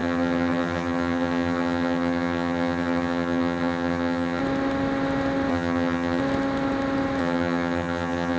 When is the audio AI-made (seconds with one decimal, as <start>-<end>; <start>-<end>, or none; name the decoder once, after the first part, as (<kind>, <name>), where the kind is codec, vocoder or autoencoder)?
0.0-4.4 (vocoder, HiFi-GAN); 5.5-6.2; 7.2-8.4